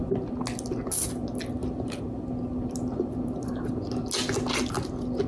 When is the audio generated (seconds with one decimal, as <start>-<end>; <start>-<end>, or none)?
none